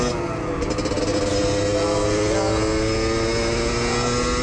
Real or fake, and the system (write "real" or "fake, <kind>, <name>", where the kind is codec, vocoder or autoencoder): real